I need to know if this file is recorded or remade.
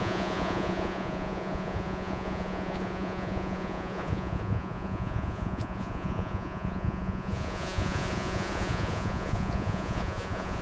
remade